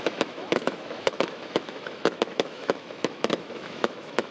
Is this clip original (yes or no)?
no